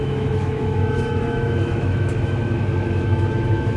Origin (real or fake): fake